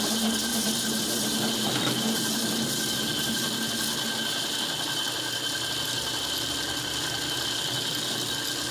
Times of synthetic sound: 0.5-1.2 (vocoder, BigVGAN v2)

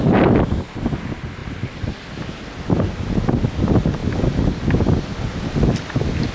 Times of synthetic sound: none

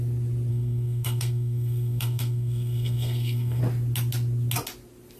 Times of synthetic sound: 0.5-3.6 (codec, SNAC)

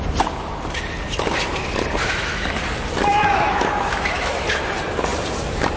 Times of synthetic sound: 2.0-2.5 (autoencoder, DAC-VAE); 3.1-4.6

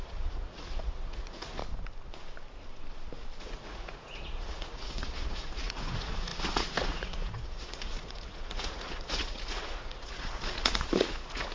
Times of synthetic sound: 0.0-1.6 (vocoder, Vocos); 3.4-11.5